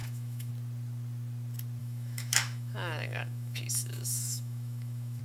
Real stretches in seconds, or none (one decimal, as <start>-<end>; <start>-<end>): 0.5-1.8